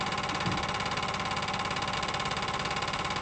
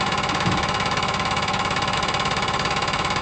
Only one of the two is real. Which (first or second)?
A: first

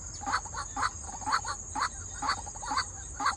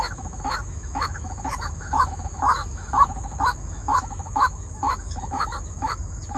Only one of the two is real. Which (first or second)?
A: first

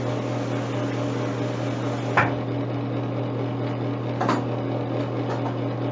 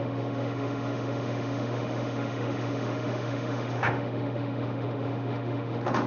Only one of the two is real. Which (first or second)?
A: first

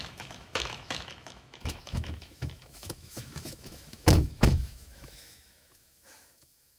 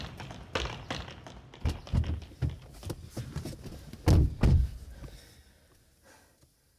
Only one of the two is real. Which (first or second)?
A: second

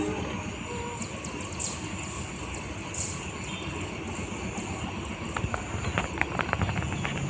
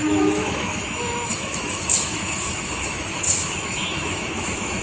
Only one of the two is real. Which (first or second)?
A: first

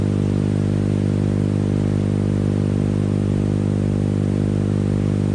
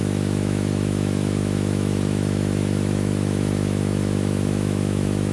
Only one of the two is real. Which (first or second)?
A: first